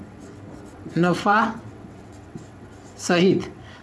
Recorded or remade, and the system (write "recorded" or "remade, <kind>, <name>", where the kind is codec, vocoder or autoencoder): remade, vocoder, WaveNeXt